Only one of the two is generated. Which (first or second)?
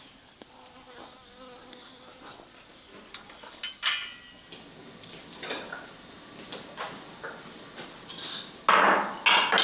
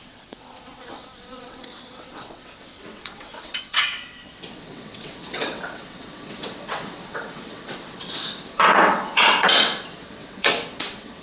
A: second